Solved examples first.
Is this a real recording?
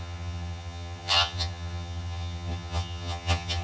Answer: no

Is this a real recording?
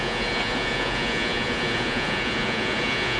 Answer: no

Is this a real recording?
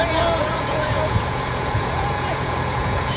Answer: no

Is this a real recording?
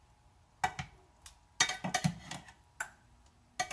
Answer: yes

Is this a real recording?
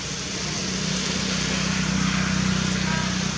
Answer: yes